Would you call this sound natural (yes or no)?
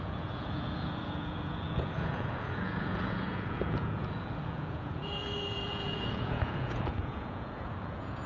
no